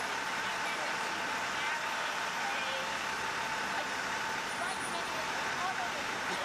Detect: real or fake real